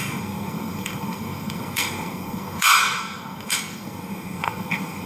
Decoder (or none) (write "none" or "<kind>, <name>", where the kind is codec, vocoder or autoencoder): codec, SNAC